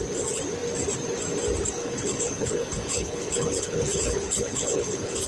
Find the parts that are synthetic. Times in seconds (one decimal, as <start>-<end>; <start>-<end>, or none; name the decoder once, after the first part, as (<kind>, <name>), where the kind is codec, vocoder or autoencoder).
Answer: 1.8-5.3 (codec, HILCodec)